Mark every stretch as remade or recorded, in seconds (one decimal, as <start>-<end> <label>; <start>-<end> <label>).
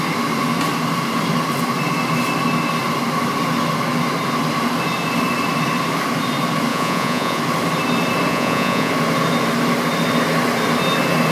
0.0-6.7 recorded; 6.7-7.4 remade; 7.4-8.3 recorded; 8.3-8.9 remade; 8.9-11.3 recorded